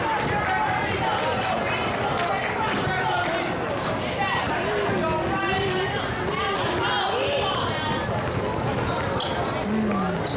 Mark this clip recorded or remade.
recorded